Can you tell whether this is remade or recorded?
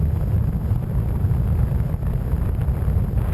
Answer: recorded